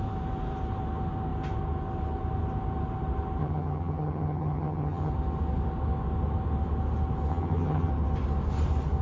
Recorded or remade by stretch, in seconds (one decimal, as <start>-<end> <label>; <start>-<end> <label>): 0.0-3.4 recorded; 3.4-5.1 remade; 5.1-7.3 recorded; 7.3-7.9 remade; 7.9-9.0 recorded